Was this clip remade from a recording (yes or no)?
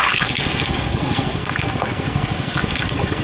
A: yes